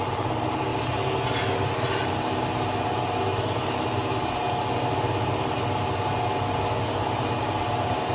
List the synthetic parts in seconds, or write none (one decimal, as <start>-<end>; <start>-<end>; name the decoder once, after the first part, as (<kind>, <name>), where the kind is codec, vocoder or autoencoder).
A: none